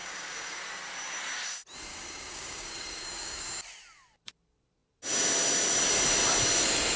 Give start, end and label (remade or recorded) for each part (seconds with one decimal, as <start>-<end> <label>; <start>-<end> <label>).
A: 0.0-0.6 remade; 0.6-1.9 recorded; 1.9-3.4 remade; 3.4-7.0 recorded